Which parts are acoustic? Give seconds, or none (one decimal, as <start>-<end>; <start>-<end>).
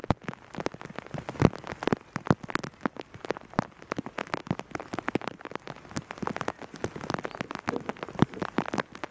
0.0-9.1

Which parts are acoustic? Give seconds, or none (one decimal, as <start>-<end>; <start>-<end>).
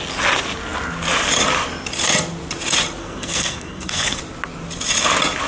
0.0-3.0; 4.2-5.5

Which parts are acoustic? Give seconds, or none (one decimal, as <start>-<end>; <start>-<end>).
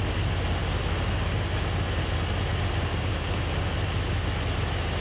0.0-2.9; 3.7-5.0